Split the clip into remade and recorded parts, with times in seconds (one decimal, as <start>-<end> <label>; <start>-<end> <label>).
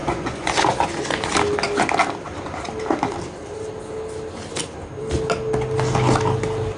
0.0-0.6 remade; 0.6-6.8 recorded